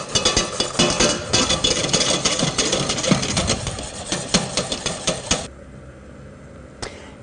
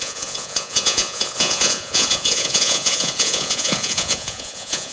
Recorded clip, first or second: first